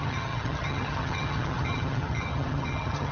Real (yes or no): no